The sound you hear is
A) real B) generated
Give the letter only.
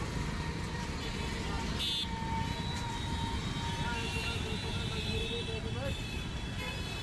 A